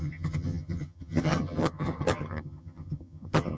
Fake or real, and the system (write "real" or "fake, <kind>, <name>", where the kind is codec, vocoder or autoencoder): fake, vocoder, HiFi-GAN